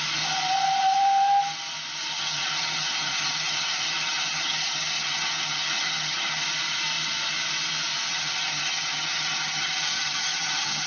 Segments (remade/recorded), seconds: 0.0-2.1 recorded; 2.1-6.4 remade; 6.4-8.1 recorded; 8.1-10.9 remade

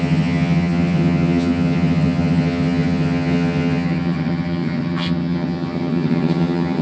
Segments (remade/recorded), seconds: 0.0-6.8 remade

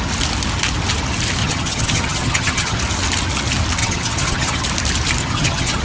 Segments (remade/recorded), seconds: 0.0-1.4 recorded; 1.4-2.8 remade; 2.8-3.8 recorded; 3.8-4.6 remade; 4.6-5.2 recorded; 5.2-5.8 remade